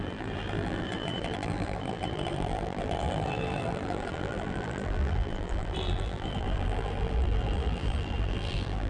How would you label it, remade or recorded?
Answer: remade